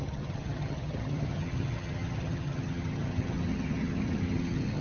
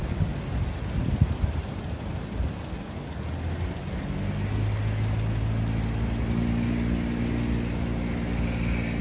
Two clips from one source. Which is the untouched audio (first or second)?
second